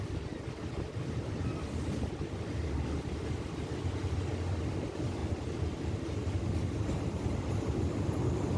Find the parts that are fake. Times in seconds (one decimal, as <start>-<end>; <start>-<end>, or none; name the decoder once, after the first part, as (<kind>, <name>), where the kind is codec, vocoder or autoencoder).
none